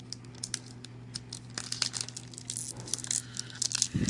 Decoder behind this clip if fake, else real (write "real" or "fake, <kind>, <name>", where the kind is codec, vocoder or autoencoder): real